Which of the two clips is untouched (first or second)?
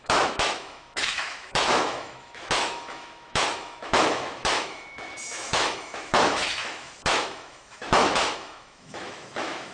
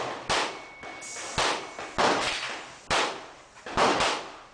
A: second